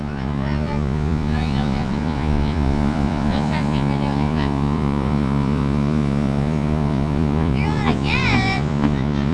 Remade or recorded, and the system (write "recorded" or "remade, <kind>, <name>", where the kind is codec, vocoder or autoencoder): remade, vocoder, Vocos